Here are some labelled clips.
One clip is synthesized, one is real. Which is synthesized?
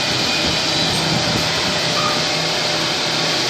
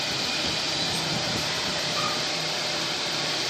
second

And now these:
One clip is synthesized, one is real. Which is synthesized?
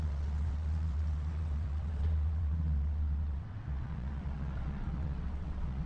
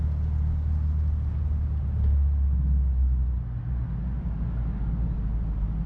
first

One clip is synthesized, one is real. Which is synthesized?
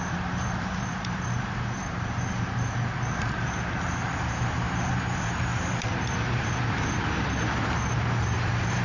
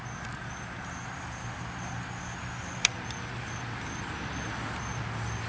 first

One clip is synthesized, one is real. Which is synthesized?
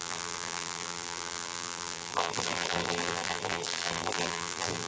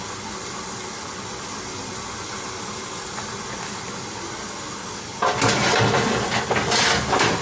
first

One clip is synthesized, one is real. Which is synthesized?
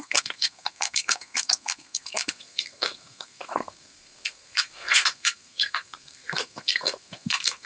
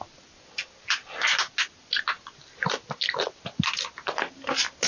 first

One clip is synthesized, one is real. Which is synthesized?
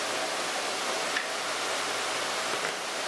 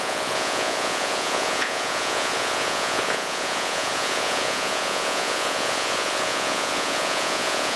second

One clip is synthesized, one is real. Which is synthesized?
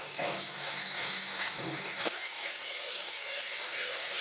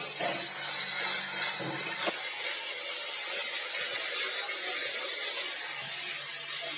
first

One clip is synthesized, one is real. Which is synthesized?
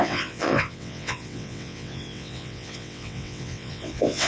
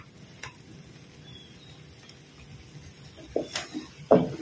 first